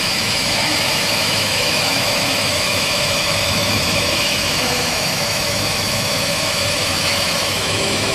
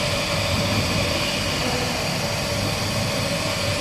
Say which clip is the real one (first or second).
second